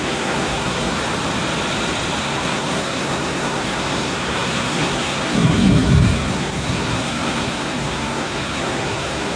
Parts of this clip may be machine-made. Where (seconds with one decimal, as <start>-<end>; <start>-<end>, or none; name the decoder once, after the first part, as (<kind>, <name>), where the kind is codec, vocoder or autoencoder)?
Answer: 0.0-1.0 (codec, SNAC); 2.2-9.4